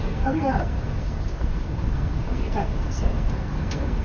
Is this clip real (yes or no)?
no